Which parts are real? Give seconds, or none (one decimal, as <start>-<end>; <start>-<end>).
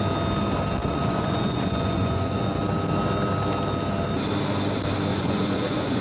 0.0-0.8; 2.6-5.1